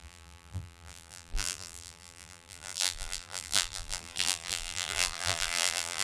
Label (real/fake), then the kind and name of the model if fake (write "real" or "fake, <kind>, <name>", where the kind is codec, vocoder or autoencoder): fake, vocoder, BigVGAN v2